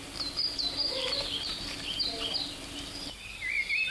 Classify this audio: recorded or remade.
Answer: recorded